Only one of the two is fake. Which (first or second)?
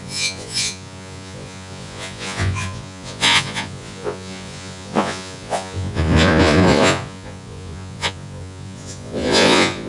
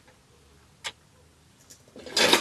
first